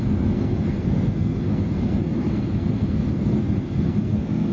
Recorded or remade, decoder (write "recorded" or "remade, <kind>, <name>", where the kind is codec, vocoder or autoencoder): remade, codec, SNAC